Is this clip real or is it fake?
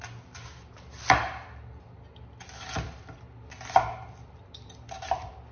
real